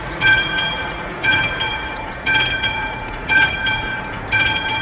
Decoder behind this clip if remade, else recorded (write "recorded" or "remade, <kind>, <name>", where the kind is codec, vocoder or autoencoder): remade, vocoder, Vocos